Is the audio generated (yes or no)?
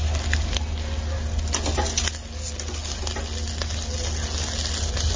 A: no